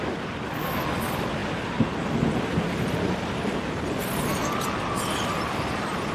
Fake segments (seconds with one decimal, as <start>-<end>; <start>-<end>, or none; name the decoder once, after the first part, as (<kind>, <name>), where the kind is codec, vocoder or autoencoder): none